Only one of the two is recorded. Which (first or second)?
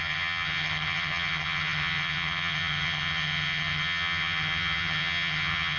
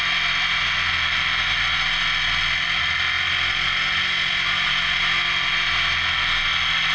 second